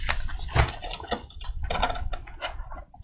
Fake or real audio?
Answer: real